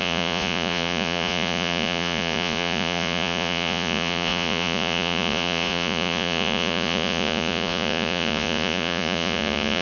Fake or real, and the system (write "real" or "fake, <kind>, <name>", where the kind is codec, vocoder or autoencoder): fake, vocoder, Vocos